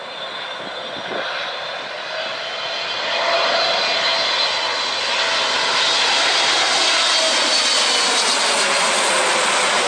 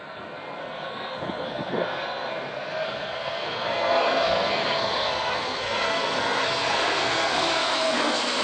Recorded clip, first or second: first